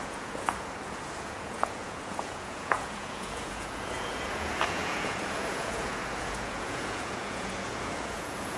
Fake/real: fake